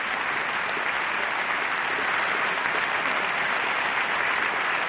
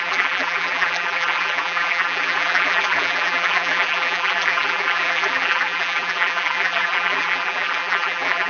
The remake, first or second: second